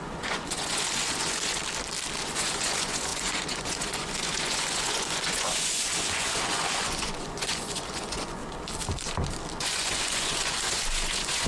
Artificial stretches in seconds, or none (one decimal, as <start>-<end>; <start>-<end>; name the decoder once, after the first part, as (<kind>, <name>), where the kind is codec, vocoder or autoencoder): 0.0-1.6 (vocoder, Vocos); 2.2-8.4; 9.6-11.5